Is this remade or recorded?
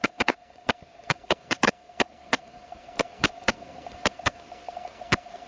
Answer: remade